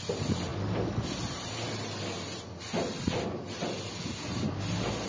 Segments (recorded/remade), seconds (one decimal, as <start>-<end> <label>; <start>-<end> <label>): 0.0-5.1 recorded